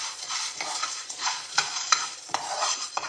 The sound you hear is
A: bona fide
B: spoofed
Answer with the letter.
B